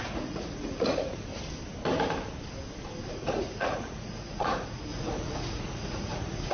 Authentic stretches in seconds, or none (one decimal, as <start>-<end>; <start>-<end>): 1.3-3.1